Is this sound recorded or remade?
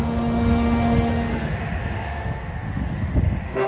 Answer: remade